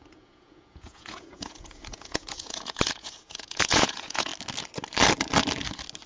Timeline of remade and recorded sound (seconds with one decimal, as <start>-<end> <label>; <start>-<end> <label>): 0.0-4.3 remade; 4.3-6.1 recorded